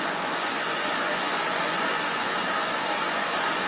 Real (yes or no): no